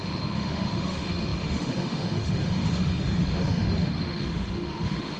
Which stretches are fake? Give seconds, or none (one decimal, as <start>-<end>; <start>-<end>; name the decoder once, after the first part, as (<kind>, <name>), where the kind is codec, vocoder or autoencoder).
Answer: 0.0-5.2 (autoencoder, DAC-VAE)